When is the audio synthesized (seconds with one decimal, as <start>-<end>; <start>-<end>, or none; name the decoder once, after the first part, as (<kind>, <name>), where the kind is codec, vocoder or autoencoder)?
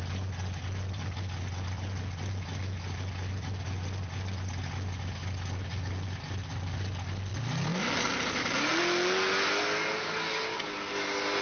7.3-8.8 (vocoder, BigVGAN v2)